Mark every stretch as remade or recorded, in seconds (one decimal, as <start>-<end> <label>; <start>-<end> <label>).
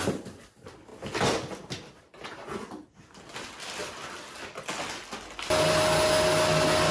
0.0-6.9 recorded